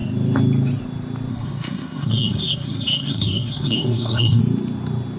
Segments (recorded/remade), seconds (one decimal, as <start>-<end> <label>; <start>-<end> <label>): 0.0-1.3 recorded; 1.3-4.4 remade; 4.4-5.2 recorded